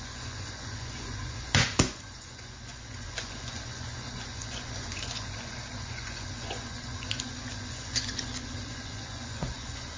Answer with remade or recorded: remade